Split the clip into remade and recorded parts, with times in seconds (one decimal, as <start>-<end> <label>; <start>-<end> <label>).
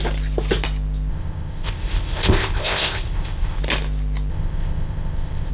0.0-1.1 recorded; 1.1-3.6 remade; 3.6-4.3 recorded; 4.3-5.5 remade